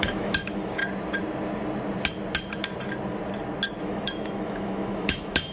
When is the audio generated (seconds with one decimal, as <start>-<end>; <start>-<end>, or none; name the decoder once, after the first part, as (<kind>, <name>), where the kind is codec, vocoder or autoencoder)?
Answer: 0.0-0.8 (autoencoder, DAC-VAE); 3.8-5.5